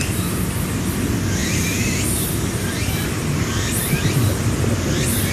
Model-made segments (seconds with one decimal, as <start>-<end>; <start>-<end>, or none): none